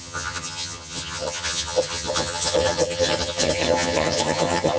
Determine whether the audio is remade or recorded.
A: remade